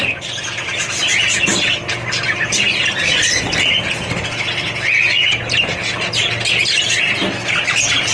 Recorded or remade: recorded